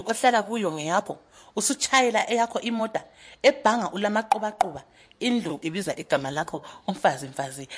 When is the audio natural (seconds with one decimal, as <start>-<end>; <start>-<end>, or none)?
1.1-5.5; 6.9-7.8